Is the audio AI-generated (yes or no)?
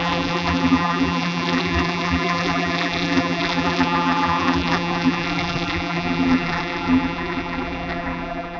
yes